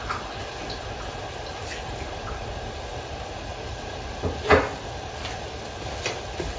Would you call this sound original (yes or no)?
yes